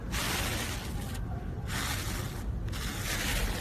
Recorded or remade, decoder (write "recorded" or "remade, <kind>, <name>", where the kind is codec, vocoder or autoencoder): recorded